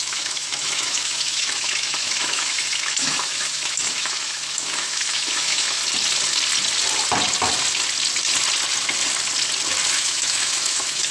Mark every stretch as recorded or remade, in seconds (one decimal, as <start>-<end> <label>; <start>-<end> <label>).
0.0-5.8 remade; 5.8-9.9 recorded; 9.9-11.1 remade